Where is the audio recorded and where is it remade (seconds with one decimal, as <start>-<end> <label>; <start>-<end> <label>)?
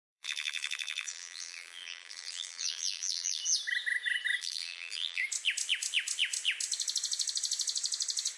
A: 0.0-3.4 remade; 3.4-4.4 recorded; 4.4-5.2 remade; 5.2-8.4 recorded